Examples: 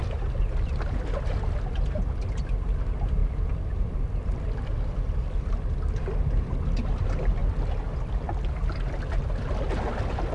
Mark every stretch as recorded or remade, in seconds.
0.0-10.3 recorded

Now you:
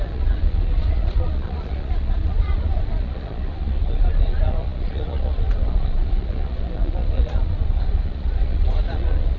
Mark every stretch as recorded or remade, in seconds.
0.0-9.4 remade